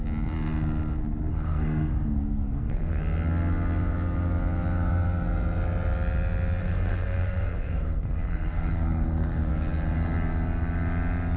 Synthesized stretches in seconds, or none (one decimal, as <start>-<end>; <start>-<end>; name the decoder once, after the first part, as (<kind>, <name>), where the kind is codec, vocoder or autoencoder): 1.3-3.0 (codec, SNAC); 6.6-9.5